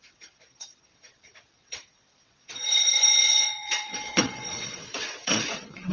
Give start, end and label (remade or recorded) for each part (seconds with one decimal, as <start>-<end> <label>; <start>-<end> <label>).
0.0-5.9 remade